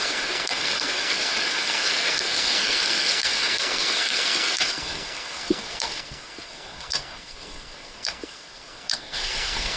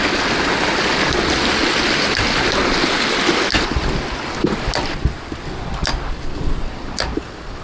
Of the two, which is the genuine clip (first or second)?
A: second